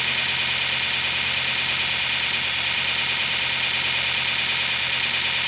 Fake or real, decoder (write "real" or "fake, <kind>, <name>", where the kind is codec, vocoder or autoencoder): real